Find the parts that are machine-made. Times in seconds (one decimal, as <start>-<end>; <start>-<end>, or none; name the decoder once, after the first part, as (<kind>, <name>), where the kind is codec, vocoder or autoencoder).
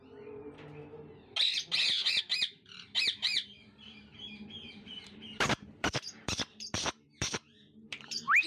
0.0-0.8 (vocoder, BigVGAN v2); 2.2-8.5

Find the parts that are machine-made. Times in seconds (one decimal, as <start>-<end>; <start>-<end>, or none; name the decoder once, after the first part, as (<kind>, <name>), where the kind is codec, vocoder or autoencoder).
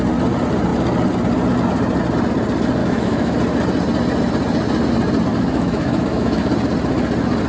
2.8-3.4 (autoencoder, DAC-VAE); 5.3-6.5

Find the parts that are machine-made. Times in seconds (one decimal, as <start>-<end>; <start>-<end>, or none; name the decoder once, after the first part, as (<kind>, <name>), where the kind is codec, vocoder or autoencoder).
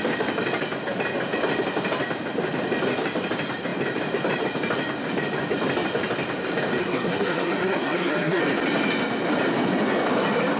6.8-8.4 (codec, SNAC)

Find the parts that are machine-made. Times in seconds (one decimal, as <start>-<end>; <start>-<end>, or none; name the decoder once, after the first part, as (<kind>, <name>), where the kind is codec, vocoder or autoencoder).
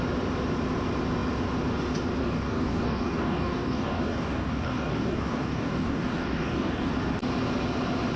2.2-6.9 (codec, DAC)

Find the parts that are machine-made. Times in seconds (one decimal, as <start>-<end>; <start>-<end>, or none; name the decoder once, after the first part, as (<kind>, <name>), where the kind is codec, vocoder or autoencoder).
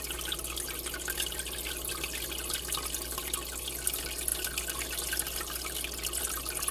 none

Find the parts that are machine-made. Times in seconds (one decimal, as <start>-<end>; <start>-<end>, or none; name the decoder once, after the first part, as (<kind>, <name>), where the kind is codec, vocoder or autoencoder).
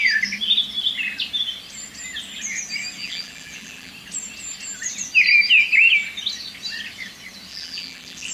3.0-3.9 (vocoder, BigVGAN v2); 7.5-8.3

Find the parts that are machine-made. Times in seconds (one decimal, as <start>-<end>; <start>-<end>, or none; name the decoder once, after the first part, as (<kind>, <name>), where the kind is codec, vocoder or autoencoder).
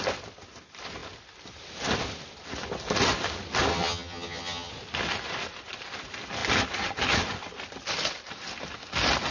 3.7-4.7 (vocoder, HiFi-GAN)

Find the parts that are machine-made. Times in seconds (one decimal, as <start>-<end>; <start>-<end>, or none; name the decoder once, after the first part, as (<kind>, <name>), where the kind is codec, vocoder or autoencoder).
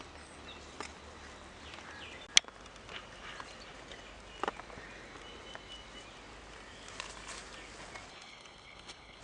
8.1-9.2 (codec, HILCodec)